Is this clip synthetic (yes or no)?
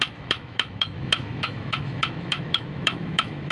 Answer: yes